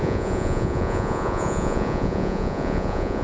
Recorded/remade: remade